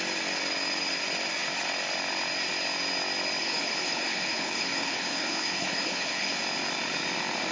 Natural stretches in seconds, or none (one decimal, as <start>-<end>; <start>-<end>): 0.0-3.4; 6.4-7.5

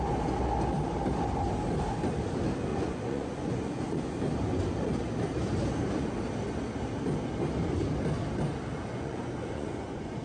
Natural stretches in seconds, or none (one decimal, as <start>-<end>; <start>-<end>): 0.0-2.7; 4.0-8.9

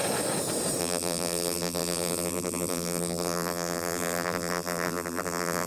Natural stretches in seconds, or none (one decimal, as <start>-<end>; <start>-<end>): 0.0-0.8

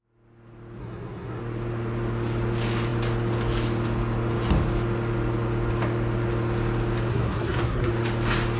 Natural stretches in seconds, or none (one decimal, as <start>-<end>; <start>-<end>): 0.0-0.8; 1.4-7.1; 7.9-8.6

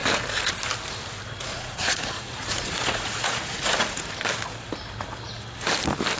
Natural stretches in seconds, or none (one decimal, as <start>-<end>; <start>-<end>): 0.0-1.5; 4.1-6.2

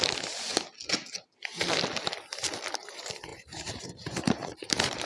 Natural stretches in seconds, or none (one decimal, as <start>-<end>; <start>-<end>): 0.5-2.8

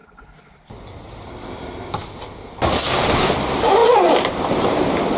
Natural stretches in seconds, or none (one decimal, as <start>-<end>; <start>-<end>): 0.0-3.8; 4.8-5.2

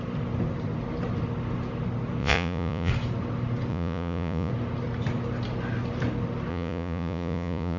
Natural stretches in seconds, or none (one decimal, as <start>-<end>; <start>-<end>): 0.0-2.2; 2.9-3.7; 4.5-6.5